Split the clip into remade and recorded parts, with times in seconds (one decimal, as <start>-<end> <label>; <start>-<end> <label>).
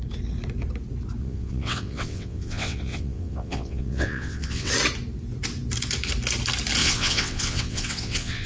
0.0-1.2 recorded; 1.2-4.7 remade; 4.7-6.8 recorded; 6.8-8.5 remade